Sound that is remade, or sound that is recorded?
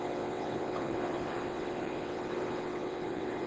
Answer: remade